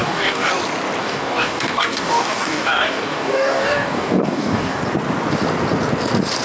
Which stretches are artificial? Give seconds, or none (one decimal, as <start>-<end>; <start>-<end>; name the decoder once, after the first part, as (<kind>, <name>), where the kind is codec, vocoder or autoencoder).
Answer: 0.0-0.5 (codec, DAC); 1.0-4.8